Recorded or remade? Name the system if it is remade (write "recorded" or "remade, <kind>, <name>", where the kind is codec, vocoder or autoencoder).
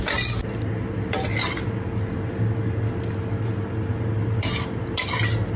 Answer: recorded